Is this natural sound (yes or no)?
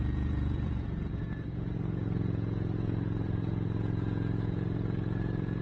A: no